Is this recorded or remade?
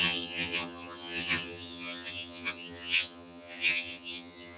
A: remade